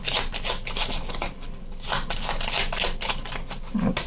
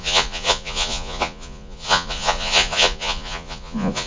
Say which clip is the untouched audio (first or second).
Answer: first